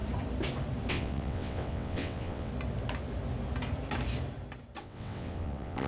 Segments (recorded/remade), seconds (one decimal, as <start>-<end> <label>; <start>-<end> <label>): 0.0-0.9 recorded; 0.9-2.5 remade; 2.5-4.8 recorded; 4.8-5.9 remade